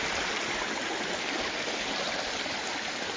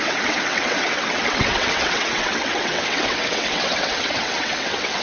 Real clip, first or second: first